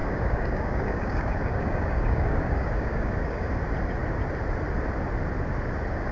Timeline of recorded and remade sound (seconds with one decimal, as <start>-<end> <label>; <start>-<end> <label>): 0.0-3.5 remade; 3.5-6.1 recorded